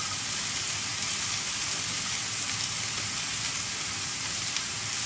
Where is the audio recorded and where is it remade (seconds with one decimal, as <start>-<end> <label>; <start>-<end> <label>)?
0.0-5.1 recorded